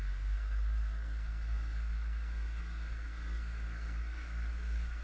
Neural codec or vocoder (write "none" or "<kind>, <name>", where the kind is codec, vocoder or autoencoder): codec, SNAC